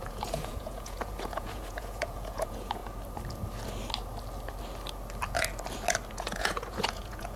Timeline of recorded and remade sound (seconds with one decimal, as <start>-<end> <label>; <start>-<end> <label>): 0.0-2.8 remade; 2.8-6.1 recorded; 6.1-7.4 remade